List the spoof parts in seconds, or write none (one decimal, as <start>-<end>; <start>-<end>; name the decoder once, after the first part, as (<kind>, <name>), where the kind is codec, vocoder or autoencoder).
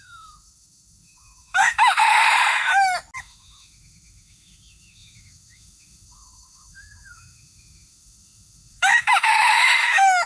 0.0-2.7 (autoencoder, DAC-VAE); 3.2-10.2